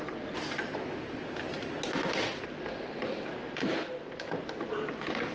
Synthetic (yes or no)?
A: no